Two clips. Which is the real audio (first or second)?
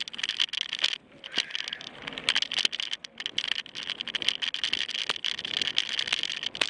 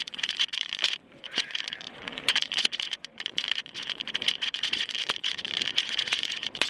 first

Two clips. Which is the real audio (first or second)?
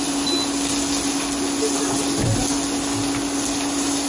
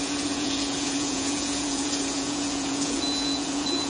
first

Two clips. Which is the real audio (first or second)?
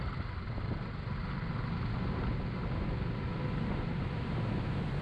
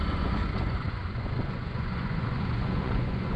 first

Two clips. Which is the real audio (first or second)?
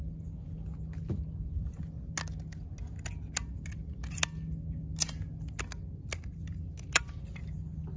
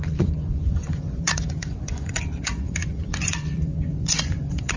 first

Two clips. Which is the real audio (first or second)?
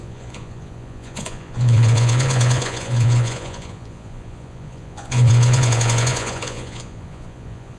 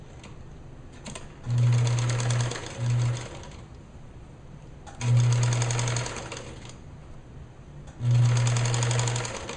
second